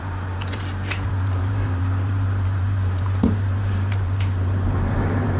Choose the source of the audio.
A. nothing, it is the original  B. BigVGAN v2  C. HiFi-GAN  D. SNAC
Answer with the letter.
B